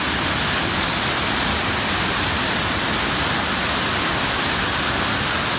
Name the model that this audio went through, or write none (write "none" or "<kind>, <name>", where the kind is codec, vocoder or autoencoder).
none